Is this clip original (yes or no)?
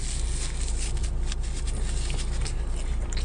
yes